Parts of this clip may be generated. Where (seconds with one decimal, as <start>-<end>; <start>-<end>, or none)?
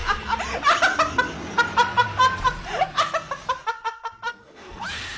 4.3-4.8